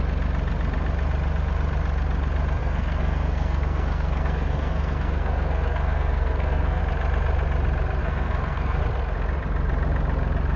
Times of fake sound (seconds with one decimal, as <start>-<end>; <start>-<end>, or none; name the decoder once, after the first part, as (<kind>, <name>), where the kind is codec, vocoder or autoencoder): 2.6-6.8 (codec, SNAC); 8.0-8.8